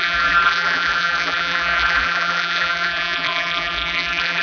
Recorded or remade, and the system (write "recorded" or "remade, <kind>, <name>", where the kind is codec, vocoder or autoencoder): remade, vocoder, BigVGAN v2